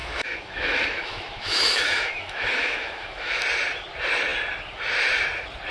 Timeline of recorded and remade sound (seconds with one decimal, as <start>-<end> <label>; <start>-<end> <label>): 0.0-3.4 remade; 3.4-5.7 recorded